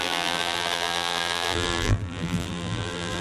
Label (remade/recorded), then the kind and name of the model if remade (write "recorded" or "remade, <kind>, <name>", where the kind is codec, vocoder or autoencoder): remade, vocoder, BigVGAN v2